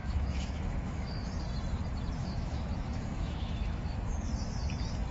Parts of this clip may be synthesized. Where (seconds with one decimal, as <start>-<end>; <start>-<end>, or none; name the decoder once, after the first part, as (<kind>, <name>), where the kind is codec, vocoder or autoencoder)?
0.0-1.3 (autoencoder, DAC-VAE); 2.2-4.3